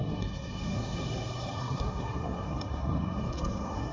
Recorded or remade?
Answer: remade